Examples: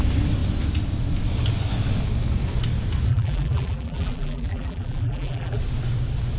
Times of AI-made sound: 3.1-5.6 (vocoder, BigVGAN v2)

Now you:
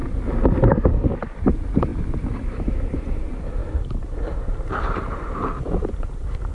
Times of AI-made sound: 1.4-1.9 (vocoder, BigVGAN v2); 2.6-3.6; 4.6-6.5

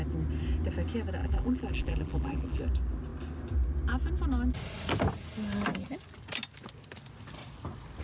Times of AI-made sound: 1.2-2.6 (vocoder, BigVGAN v2)

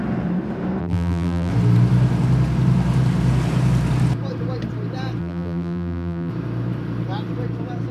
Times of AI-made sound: 0.8-1.5 (vocoder, BigVGAN v2); 5.2-6.3